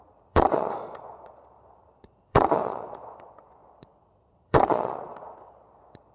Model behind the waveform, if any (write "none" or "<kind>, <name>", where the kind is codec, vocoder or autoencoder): vocoder, Vocos